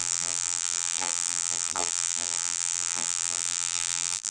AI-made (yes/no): yes